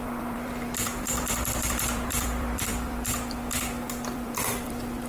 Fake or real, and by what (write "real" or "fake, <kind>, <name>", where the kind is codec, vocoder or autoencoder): fake, vocoder, BigVGAN v2